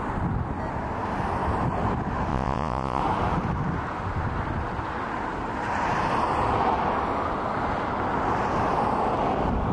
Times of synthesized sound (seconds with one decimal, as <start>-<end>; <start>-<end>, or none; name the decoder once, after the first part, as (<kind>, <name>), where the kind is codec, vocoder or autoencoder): 2.3-3.0 (vocoder, Vocos)